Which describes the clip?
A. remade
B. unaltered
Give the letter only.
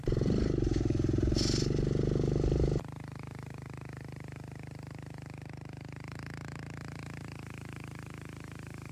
A